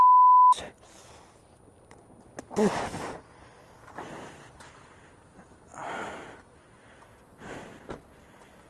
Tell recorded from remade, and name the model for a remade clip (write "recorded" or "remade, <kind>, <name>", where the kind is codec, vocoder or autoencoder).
recorded